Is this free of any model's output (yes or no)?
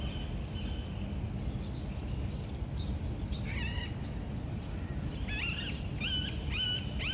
yes